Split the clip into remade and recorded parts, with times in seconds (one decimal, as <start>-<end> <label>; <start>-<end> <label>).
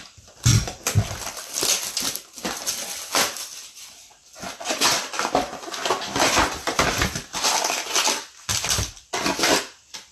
0.0-0.5 recorded; 0.5-1.8 remade; 1.8-10.1 recorded